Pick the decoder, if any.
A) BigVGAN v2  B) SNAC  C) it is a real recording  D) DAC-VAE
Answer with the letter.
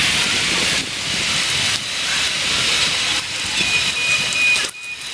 C